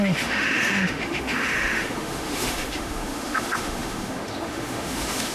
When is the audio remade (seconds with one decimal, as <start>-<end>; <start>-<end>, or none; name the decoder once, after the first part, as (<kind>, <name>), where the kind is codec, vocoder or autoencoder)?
0.0-5.3 (autoencoder, DAC-VAE)